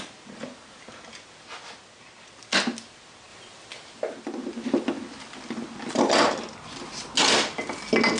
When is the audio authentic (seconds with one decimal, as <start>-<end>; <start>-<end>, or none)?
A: 0.0-8.2